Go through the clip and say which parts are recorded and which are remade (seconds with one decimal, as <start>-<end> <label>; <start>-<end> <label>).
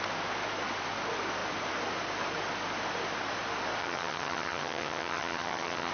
0.0-3.8 recorded; 3.8-5.9 remade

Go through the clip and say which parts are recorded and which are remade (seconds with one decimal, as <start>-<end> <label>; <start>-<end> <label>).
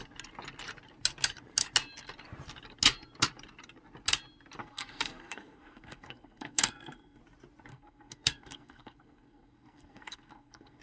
0.0-4.6 recorded; 4.6-7.2 remade; 7.2-7.7 recorded; 7.7-10.8 remade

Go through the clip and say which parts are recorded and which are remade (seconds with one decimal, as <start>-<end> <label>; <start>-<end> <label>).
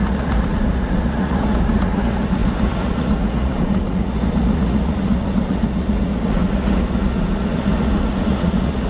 0.0-8.9 remade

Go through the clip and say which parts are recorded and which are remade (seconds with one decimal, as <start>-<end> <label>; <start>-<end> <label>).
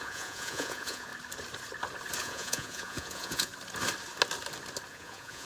0.0-1.1 remade; 1.1-2.2 recorded; 2.2-3.5 remade; 3.5-4.9 recorded; 4.9-5.4 remade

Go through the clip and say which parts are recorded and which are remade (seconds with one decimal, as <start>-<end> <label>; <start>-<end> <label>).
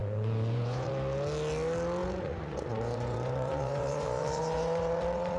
0.0-0.9 remade; 0.9-2.0 recorded; 2.0-5.4 remade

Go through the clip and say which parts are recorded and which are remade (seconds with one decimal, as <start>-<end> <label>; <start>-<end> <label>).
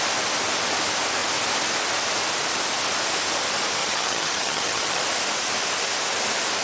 0.0-3.8 recorded; 3.8-5.0 remade; 5.0-6.6 recorded